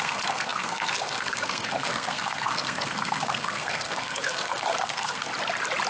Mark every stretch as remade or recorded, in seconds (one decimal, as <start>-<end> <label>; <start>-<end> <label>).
0.0-5.3 remade; 5.3-5.9 recorded